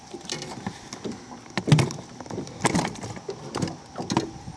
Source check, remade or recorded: recorded